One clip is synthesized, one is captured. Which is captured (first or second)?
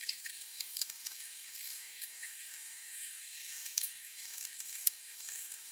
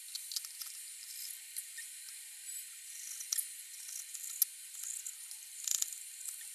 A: second